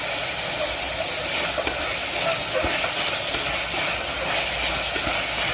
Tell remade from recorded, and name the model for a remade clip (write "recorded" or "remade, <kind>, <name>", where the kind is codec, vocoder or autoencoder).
recorded